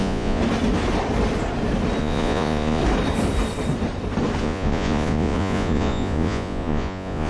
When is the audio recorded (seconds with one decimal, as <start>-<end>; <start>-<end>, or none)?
0.4-2.0; 2.8-4.4

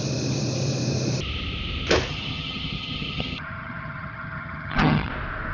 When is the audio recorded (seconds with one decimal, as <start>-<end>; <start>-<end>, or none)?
0.0-2.1; 5.1-5.5